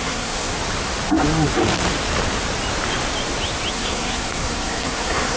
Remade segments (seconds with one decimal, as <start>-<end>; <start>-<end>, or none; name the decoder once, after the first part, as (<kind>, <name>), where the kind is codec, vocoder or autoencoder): 0.0-0.5 (codec, SNAC); 3.7-5.4